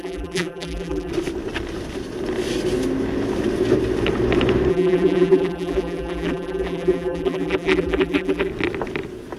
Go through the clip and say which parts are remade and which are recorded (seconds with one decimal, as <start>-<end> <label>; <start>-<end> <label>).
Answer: 0.0-1.1 remade; 1.1-4.7 recorded; 4.7-8.5 remade; 8.5-9.4 recorded